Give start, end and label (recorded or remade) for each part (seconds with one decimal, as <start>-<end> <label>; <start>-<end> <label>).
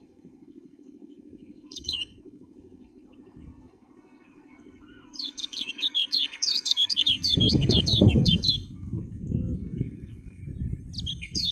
0.0-10.4 remade; 10.4-11.1 recorded; 11.1-11.5 remade